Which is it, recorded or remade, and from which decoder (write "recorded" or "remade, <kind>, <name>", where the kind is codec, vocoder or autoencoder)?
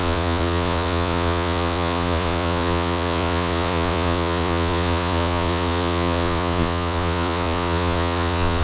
remade, vocoder, Vocos